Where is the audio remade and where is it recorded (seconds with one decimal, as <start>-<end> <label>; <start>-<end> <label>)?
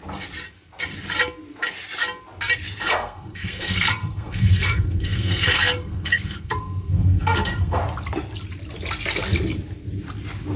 0.0-2.8 recorded; 2.8-7.8 remade; 7.8-10.6 recorded